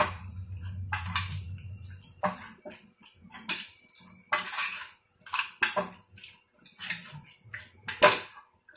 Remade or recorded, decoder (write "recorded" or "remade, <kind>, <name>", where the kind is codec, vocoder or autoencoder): recorded